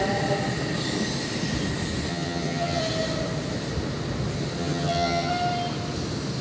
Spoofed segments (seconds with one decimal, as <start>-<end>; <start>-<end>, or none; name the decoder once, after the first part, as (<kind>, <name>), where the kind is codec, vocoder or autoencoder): 2.1-2.8 (vocoder, HiFi-GAN); 4.6-5.3